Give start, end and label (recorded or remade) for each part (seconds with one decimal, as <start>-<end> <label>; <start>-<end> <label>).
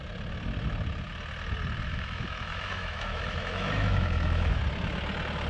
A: 0.0-1.9 recorded; 1.9-4.6 remade; 4.6-5.5 recorded